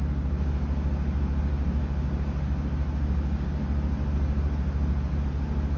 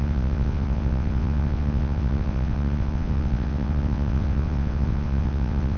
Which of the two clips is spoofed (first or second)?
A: second